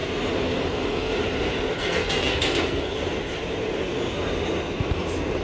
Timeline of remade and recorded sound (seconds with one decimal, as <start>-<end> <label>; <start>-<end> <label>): 0.0-1.8 recorded; 1.8-2.9 remade; 2.9-5.4 recorded